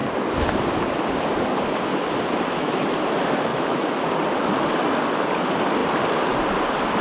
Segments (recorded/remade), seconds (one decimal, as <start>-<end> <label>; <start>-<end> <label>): 0.0-3.5 recorded; 3.5-4.0 remade; 4.0-7.0 recorded